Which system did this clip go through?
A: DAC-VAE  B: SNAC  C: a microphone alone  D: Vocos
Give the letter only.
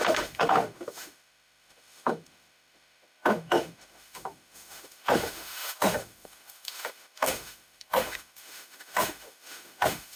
A